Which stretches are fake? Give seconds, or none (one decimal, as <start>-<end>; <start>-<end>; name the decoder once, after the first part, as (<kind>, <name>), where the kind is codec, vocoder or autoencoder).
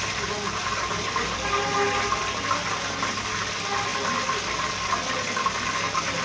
none